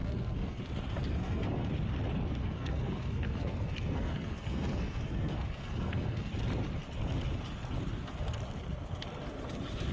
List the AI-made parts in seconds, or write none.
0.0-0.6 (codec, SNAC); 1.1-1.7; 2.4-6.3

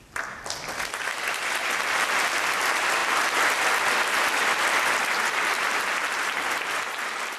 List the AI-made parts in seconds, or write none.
none

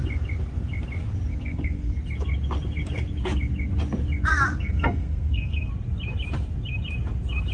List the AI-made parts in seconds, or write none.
1.3-2.0 (codec, SNAC); 4.3-5.7

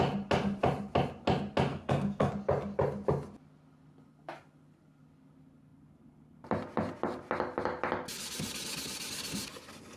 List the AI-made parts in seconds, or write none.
1.7-2.3 (codec, SNAC)

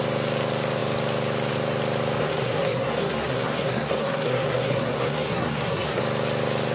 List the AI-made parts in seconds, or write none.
2.2-6.0 (codec, SNAC)